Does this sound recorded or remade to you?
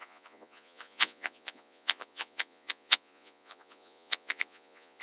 remade